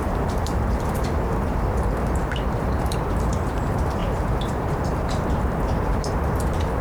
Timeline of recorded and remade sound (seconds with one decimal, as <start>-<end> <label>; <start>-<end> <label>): 0.0-6.8 remade